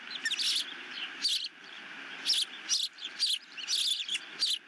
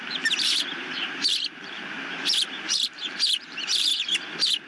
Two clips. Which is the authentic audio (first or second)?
first